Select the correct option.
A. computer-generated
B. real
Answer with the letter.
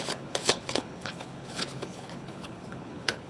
A